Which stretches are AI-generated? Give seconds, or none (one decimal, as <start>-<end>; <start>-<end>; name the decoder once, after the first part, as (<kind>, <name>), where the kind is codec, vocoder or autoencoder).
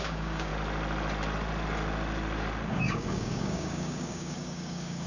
0.0-0.5 (codec, DAC); 2.7-5.1